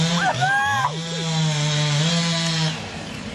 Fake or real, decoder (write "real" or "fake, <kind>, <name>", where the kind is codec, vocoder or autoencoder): real